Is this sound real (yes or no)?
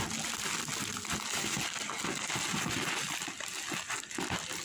yes